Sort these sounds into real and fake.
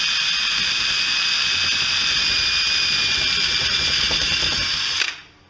real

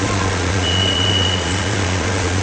fake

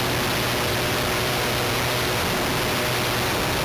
real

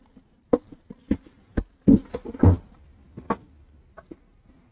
real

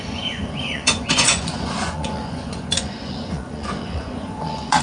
fake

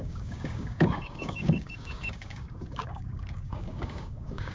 fake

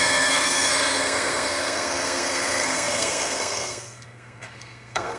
fake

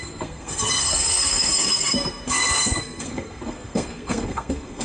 fake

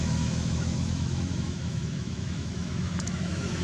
fake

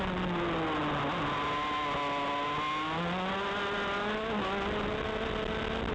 real